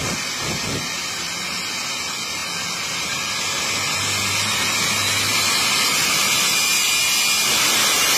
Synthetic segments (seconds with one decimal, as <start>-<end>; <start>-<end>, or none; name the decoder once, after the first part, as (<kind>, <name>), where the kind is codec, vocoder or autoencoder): none